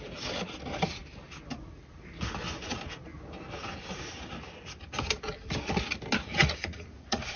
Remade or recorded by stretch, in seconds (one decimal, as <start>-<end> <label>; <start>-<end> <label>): 0.0-6.3 recorded; 6.3-7.4 remade

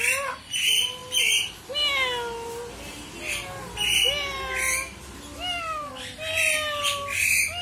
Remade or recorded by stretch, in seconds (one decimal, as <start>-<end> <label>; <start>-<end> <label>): 0.0-7.6 recorded

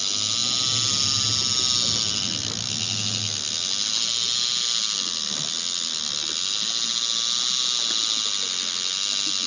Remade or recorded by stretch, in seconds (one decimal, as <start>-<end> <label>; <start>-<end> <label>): 0.0-9.5 recorded

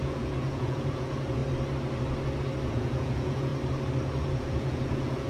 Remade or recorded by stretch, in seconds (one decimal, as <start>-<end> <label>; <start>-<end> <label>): 0.0-1.4 remade; 1.4-2.7 recorded; 2.7-3.5 remade; 3.5-4.2 recorded; 4.2-5.3 remade

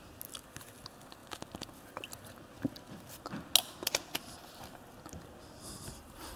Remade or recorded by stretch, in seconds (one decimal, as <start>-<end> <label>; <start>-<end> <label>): 0.0-6.4 recorded

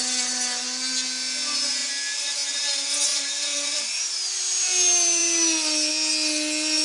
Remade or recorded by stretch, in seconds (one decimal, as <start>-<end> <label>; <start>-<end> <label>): 0.0-3.1 recorded; 3.1-4.0 remade; 4.0-6.8 recorded